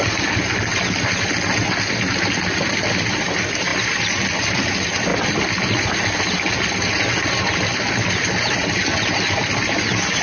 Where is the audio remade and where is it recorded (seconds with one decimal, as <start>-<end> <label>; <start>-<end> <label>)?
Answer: 0.0-10.2 recorded